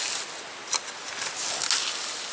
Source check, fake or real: real